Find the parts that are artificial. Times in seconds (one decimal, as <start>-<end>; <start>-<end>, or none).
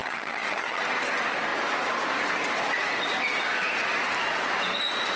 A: 0.0-0.8